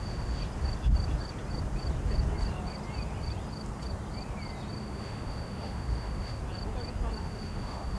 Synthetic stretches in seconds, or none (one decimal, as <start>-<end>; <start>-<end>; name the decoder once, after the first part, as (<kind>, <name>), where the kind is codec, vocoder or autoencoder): 0.0-0.4 (autoencoder, DAC-VAE); 4.8-6.4; 7.2-8.0